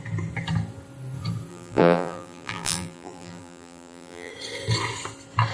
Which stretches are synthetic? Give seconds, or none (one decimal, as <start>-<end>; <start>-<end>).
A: 1.5-4.3